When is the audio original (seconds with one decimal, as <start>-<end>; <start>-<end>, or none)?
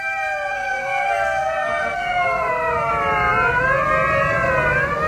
0.0-0.5; 2.9-5.1